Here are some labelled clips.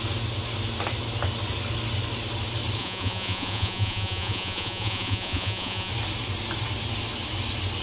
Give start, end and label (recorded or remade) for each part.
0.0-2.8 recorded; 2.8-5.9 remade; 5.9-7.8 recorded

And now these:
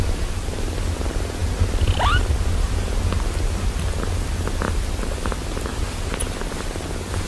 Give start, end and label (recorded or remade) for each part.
0.0-7.3 recorded